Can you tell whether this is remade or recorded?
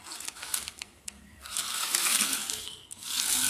remade